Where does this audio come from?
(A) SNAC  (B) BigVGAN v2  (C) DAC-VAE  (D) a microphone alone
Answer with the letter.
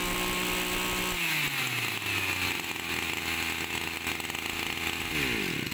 D